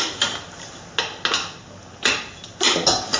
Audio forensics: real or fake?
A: real